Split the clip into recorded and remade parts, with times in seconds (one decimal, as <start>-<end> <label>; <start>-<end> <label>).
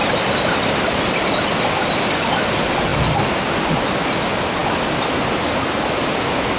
0.0-6.6 recorded